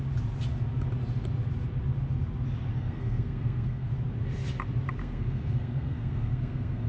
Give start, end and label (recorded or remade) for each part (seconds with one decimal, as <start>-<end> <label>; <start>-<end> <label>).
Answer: 0.0-2.7 recorded; 2.7-3.9 remade; 3.9-5.0 recorded; 5.0-6.9 remade